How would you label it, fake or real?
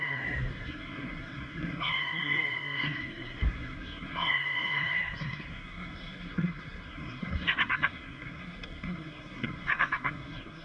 fake